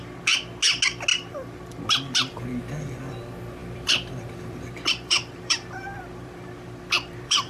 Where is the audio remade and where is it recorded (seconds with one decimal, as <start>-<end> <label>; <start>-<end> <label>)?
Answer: 0.0-1.1 recorded; 1.1-1.6 remade; 1.6-3.6 recorded; 3.6-7.5 remade